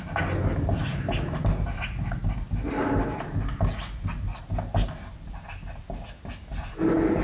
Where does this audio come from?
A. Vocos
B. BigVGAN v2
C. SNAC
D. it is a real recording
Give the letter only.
D